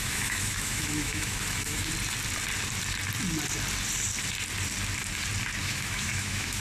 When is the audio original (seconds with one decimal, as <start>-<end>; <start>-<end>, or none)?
1.9-5.6